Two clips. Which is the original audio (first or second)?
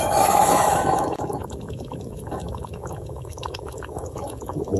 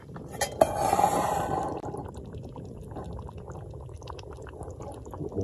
second